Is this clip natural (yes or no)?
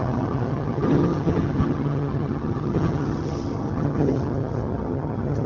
no